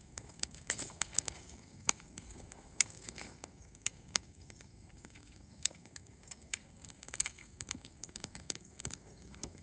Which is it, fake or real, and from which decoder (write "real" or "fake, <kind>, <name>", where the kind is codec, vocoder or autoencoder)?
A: fake, codec, SNAC